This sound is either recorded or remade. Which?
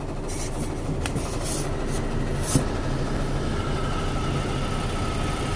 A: recorded